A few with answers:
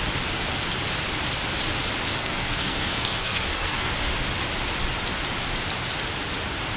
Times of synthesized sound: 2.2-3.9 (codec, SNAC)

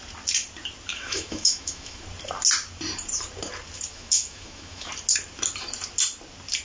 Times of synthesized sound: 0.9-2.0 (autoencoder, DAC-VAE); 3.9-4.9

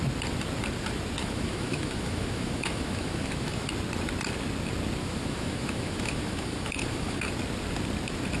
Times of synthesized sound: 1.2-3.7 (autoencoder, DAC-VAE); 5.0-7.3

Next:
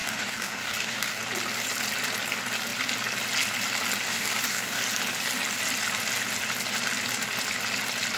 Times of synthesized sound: 0.0-1.2 (codec, DAC); 4.1-4.8

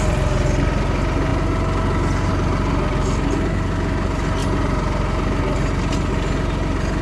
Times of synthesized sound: none

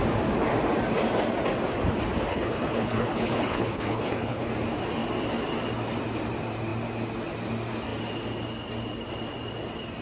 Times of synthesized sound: 2.3-4.5 (codec, HILCodec)